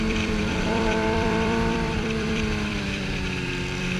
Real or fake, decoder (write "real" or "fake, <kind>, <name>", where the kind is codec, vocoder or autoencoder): fake, vocoder, BigVGAN v2